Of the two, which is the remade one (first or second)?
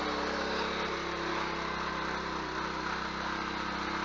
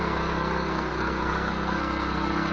second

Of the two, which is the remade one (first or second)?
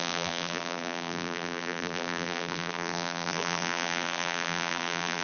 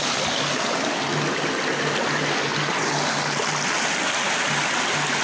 first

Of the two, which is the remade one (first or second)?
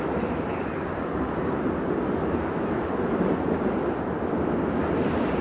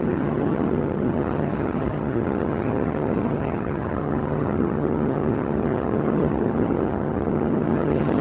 second